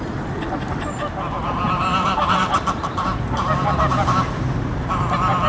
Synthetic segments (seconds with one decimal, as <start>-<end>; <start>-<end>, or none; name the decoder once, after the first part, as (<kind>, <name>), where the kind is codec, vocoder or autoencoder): 0.0-5.5 (vocoder, BigVGAN v2)